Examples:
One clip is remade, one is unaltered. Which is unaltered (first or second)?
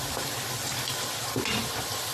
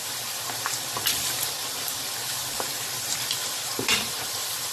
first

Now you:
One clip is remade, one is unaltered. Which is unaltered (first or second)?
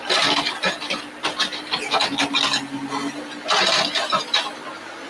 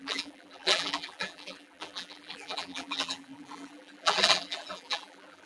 first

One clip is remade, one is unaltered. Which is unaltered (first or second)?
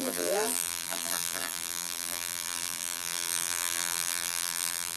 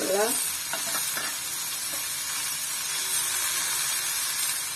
second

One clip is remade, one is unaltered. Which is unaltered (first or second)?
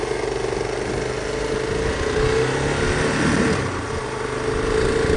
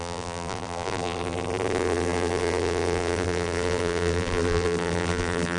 first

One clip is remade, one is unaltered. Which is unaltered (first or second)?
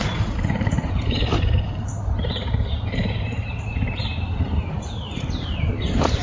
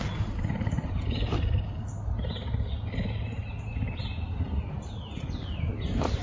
second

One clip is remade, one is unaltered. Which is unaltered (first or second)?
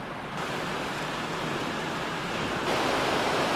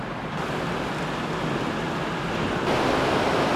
second